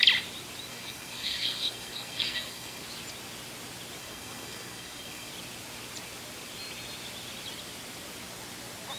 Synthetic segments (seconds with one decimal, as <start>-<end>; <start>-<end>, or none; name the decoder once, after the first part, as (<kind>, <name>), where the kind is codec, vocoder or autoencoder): 0.7-2.8 (codec, SNAC); 4.0-5.3